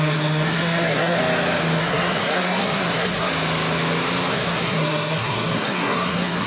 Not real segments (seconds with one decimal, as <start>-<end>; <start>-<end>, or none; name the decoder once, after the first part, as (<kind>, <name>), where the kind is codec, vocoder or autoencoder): 0.0-1.2 (codec, SNAC); 1.8-3.3; 4.3-6.5